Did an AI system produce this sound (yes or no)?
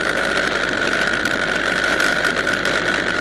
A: no